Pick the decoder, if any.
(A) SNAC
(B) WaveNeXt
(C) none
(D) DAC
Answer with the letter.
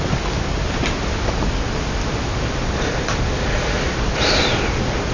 C